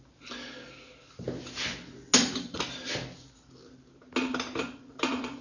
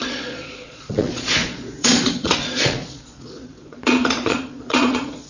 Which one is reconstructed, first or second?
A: second